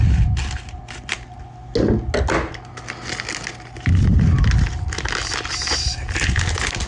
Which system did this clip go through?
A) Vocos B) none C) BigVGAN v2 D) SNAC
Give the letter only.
B